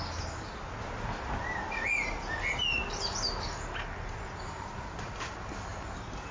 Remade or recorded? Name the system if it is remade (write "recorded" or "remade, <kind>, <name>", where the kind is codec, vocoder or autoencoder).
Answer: recorded